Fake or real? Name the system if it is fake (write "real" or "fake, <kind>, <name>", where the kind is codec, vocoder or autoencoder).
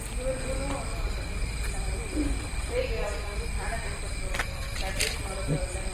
real